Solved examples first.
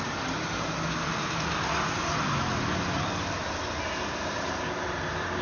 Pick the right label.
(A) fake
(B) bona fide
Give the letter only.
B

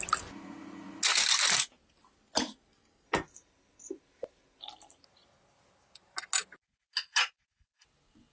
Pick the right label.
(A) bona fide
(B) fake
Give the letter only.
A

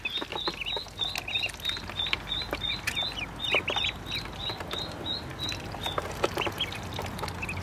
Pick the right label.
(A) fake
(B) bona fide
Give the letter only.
B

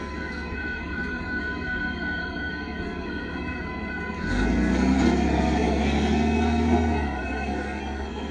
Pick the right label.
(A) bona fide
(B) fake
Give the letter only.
B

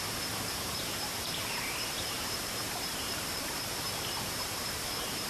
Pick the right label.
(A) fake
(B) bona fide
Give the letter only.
A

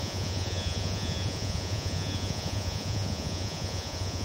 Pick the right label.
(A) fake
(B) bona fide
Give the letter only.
A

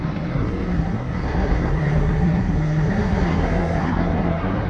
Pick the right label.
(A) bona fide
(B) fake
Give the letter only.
B